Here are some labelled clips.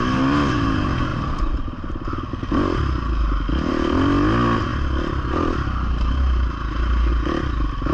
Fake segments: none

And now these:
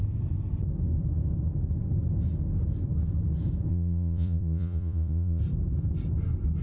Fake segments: 3.7-5.4

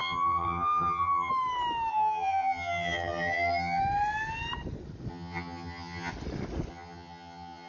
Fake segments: 0.0-1.3; 1.9-3.8; 5.1-6.1; 6.7-7.7

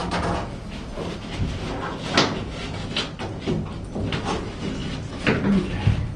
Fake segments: none